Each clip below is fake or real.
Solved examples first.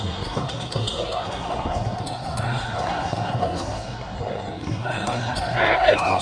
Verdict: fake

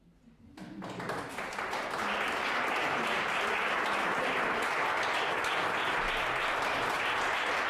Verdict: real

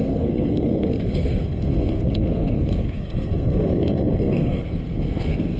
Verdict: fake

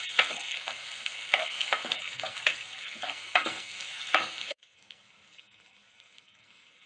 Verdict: fake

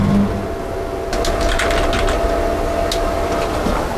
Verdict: real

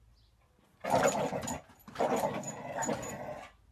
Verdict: real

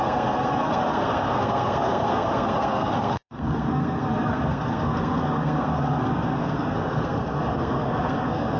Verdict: fake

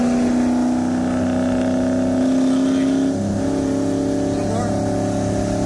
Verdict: real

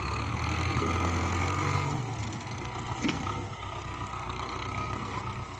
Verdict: fake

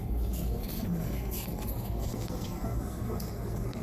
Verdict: fake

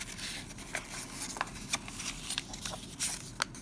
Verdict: real